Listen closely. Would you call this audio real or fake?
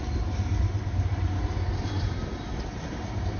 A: real